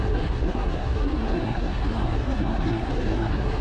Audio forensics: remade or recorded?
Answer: remade